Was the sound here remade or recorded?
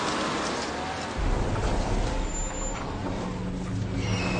recorded